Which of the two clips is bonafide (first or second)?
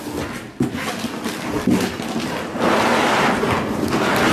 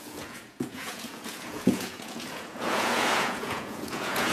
first